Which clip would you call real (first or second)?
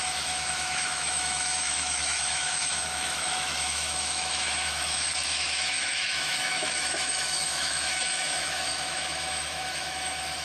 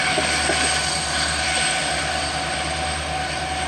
second